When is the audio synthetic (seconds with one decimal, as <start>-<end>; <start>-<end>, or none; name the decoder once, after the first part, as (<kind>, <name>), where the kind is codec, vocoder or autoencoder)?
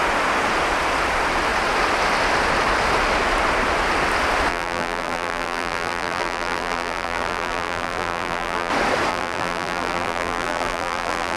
4.5-8.7 (vocoder, BigVGAN v2); 9.1-11.4